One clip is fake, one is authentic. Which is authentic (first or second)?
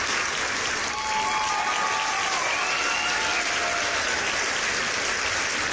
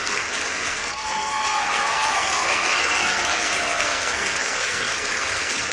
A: first